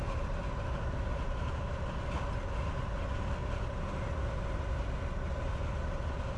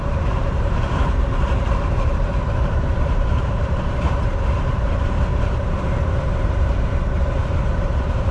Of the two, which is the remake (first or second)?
second